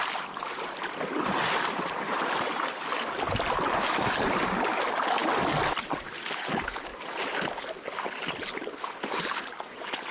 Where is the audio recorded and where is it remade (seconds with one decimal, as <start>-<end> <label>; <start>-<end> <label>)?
0.0-6.9 recorded; 6.9-9.3 remade; 9.3-10.1 recorded